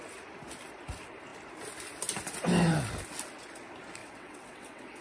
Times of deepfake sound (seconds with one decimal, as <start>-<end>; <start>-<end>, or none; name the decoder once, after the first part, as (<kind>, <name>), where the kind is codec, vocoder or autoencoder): 4.0-5.0 (vocoder, WaveNeXt)